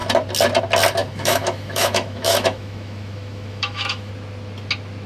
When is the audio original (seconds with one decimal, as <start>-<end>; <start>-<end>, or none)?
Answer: 0.0-1.0; 4.1-5.1